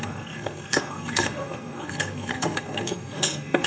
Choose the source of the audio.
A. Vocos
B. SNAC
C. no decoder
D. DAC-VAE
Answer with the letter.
B